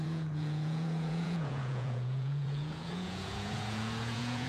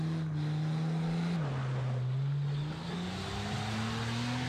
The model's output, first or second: first